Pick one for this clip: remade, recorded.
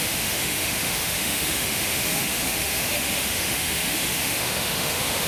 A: remade